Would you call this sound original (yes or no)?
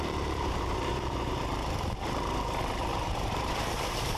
no